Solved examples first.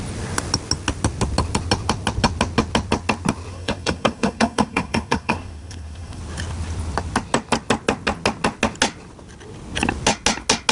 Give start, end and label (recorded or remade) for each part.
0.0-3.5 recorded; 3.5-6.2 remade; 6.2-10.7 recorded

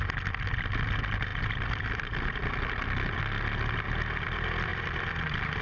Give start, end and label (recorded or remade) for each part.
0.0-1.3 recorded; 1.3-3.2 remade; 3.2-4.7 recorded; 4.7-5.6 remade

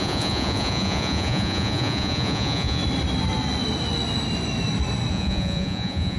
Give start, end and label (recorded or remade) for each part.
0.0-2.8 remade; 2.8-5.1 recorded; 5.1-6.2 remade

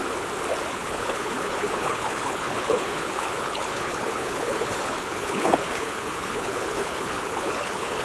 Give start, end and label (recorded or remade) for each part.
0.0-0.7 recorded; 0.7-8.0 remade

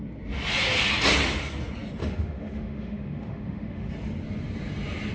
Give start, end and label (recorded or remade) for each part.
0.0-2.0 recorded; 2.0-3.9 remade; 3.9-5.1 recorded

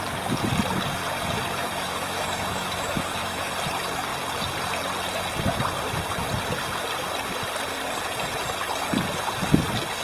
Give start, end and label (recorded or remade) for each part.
0.0-1.6 recorded; 1.6-3.5 remade; 3.5-10.0 recorded

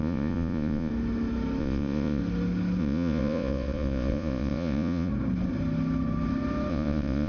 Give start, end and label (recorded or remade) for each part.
0.0-0.9 remade; 0.9-1.6 recorded; 1.6-2.2 remade; 2.2-2.8 recorded; 2.8-5.1 remade; 5.1-6.7 recorded; 6.7-7.3 remade

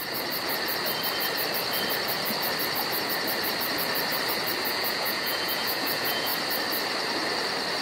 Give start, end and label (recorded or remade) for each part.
0.0-4.7 recorded; 4.7-6.3 remade; 6.3-7.8 recorded